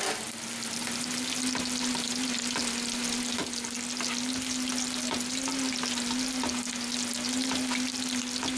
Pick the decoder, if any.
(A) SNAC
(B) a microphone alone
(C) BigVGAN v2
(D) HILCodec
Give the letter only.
B